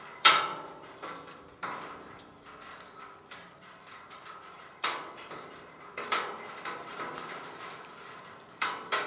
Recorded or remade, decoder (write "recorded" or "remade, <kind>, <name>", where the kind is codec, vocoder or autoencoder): remade, vocoder, BigVGAN v2